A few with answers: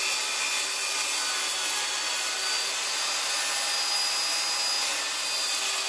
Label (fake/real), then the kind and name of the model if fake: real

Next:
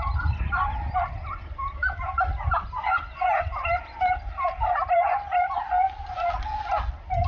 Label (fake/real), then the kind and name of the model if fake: real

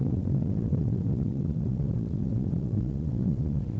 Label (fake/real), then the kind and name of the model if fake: fake, vocoder, WaveNeXt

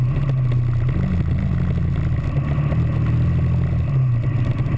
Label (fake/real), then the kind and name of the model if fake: real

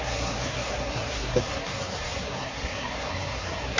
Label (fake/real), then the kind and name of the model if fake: fake, codec, SNAC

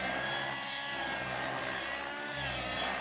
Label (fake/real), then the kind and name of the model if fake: real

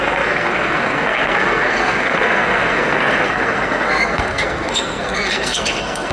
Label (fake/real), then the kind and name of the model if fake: fake, codec, SNAC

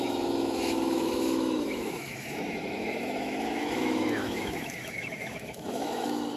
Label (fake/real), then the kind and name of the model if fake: fake, autoencoder, DAC-VAE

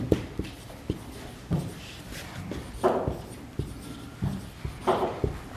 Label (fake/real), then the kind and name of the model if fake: real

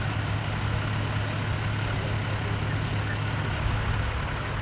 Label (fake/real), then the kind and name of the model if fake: real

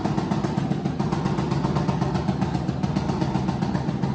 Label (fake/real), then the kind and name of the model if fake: real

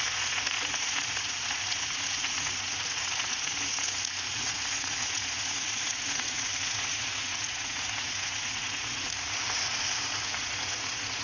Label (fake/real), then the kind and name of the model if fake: fake, vocoder, Vocos